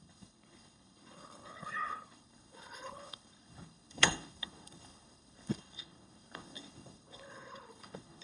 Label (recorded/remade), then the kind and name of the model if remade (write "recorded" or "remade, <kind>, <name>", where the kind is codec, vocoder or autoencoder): remade, codec, HILCodec